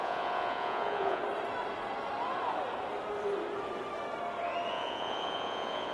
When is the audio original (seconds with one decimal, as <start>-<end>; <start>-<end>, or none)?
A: 1.2-4.7